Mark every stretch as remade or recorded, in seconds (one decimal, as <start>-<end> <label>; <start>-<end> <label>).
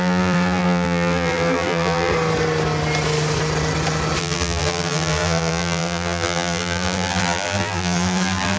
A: 0.0-2.1 remade; 2.1-4.2 recorded; 4.2-8.6 remade